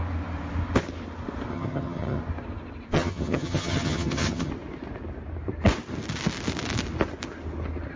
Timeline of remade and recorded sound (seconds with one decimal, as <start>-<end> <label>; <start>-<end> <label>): 0.0-1.5 recorded; 1.5-2.2 remade; 2.2-2.9 recorded; 2.9-4.5 remade; 4.5-8.0 recorded